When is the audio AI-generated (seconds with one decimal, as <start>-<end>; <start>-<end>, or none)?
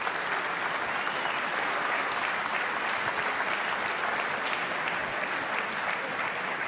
none